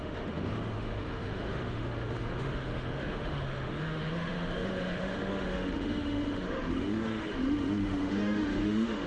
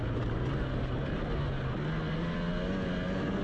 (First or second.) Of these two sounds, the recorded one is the second